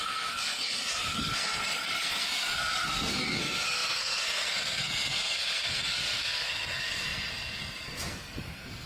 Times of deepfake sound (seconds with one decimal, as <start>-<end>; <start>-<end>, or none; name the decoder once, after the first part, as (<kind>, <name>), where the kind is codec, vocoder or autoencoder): 0.0-8.9 (codec, SNAC)